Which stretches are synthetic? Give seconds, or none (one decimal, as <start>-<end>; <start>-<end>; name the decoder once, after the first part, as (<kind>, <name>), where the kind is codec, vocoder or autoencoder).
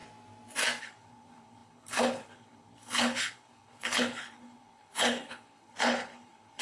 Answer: 0.8-6.6 (codec, HILCodec)